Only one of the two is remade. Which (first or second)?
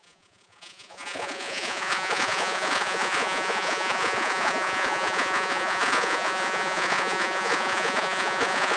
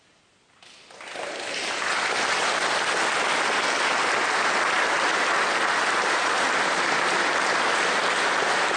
first